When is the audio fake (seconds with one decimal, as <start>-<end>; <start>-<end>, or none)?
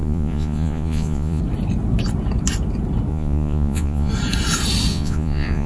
0.0-1.4; 3.1-4.1; 4.9-5.7